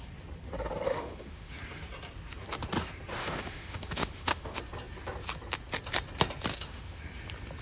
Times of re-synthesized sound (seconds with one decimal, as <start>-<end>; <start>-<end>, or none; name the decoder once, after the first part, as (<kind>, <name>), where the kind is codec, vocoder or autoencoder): 0.9-1.5 (autoencoder, DAC-VAE); 3.2-4.6; 6.5-7.0